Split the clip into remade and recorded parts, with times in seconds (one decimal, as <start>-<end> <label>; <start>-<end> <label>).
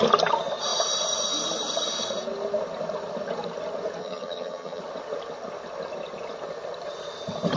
0.0-4.0 recorded; 4.0-4.8 remade; 4.8-7.6 recorded